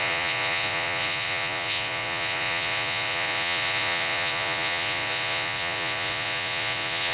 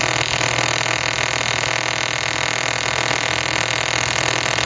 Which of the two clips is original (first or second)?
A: second